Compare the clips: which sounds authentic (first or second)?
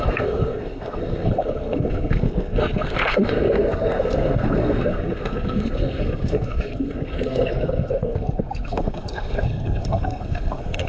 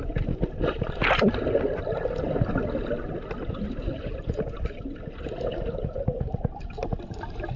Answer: second